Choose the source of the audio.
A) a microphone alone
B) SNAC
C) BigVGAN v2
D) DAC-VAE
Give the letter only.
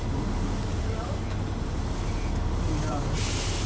A